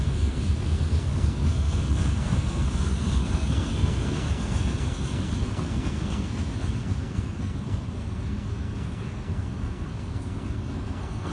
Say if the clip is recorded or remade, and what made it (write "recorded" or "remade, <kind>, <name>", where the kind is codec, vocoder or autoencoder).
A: remade, codec, SNAC